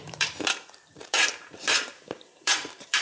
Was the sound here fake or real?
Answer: fake